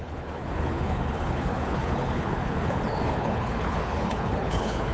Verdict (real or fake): fake